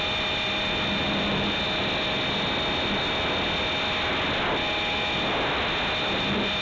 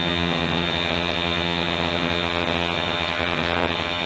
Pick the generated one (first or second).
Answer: second